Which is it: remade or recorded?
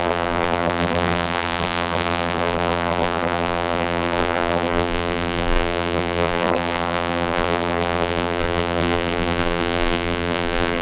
remade